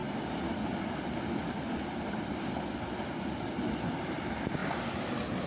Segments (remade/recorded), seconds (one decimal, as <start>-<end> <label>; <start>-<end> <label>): 0.0-5.5 recorded